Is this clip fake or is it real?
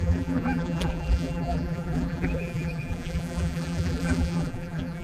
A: fake